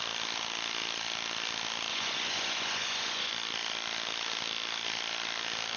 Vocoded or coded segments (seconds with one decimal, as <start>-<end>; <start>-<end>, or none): 1.9-3.3